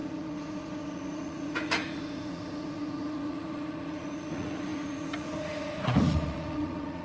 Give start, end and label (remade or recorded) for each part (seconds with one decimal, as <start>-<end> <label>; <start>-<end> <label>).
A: 0.0-7.0 remade